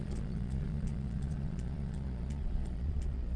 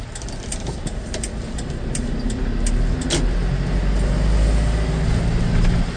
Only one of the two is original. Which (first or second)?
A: second